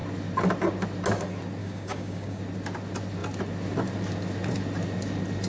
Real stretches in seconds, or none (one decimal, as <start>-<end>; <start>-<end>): 0.0-1.6; 2.4-5.5